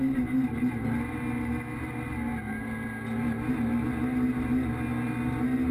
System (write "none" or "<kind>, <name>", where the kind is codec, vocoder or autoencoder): none